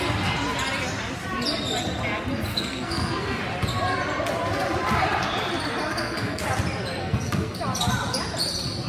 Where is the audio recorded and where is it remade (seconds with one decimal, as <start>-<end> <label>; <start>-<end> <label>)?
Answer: 0.0-2.5 recorded; 2.5-3.4 remade; 3.4-5.9 recorded; 5.9-6.4 remade; 6.4-7.0 recorded; 7.0-7.6 remade; 7.6-8.9 recorded